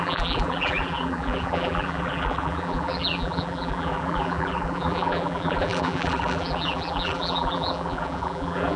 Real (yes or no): no